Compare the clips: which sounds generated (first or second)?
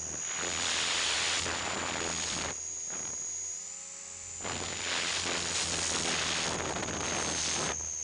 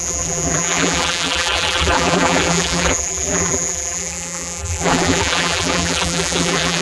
second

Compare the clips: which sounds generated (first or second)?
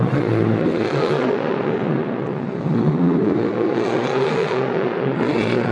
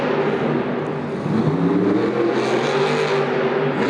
first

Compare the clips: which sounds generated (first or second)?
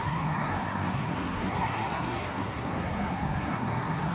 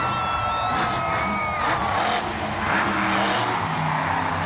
first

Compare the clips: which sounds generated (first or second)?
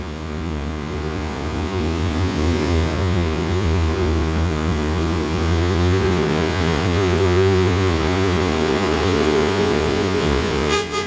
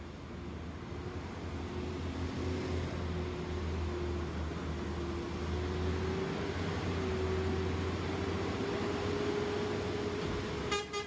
first